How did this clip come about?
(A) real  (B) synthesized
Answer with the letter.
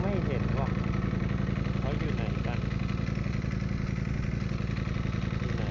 A